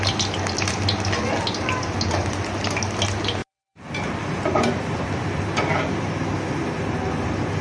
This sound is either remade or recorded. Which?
recorded